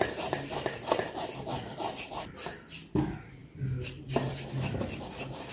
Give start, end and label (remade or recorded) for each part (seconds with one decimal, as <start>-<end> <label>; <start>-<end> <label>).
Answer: 0.0-5.5 recorded